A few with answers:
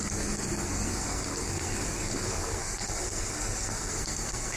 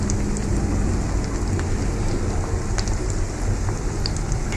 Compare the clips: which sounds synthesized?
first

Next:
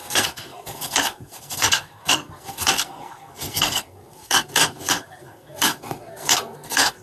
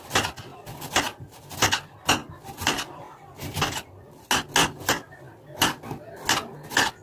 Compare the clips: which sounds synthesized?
first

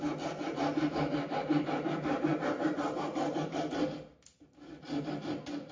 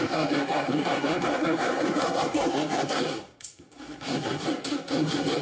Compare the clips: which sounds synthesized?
second